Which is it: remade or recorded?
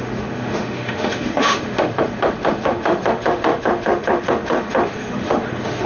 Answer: remade